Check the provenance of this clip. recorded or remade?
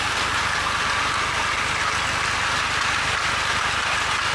recorded